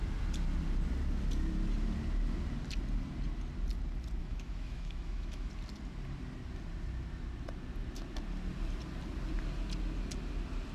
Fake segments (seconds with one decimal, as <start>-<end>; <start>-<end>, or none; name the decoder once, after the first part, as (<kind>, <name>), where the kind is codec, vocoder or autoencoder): 4.2-5.5 (autoencoder, DAC-VAE)